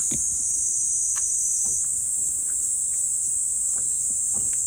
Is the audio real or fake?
real